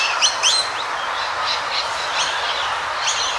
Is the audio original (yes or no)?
yes